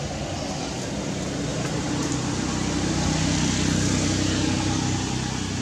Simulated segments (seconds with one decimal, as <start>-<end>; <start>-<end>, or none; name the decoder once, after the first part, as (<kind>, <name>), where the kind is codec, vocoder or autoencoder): 1.5-2.1 (vocoder, BigVGAN v2)